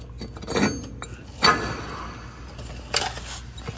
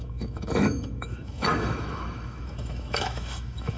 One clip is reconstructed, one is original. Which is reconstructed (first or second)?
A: second